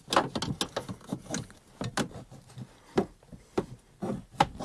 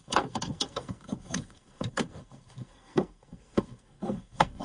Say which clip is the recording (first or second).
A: first